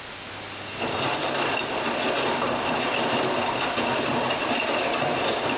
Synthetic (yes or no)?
no